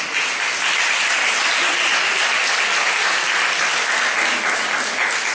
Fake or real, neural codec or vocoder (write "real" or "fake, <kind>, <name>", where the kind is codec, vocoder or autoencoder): real